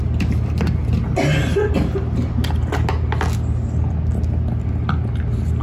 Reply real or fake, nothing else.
real